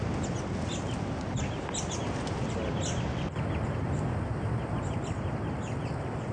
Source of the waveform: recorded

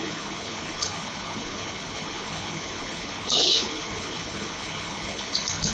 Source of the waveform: remade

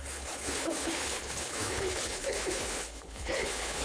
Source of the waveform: remade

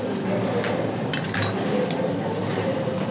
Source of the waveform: recorded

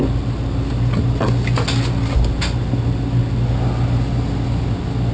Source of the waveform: recorded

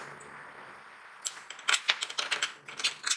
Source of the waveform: recorded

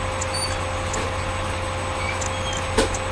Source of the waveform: recorded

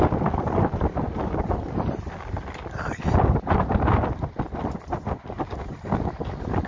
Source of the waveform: recorded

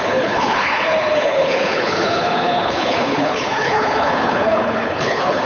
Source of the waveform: remade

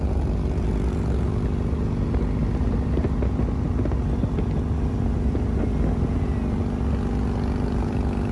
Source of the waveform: recorded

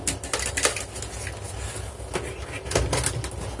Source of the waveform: recorded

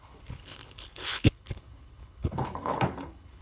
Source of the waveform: remade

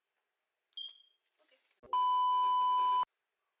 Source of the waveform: recorded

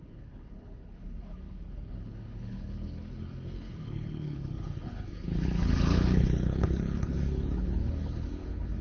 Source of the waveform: remade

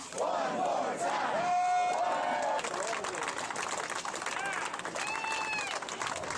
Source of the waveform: recorded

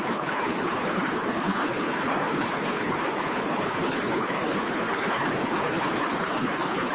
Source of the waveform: remade